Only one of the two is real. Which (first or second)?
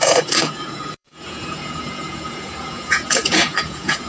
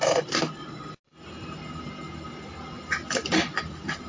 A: second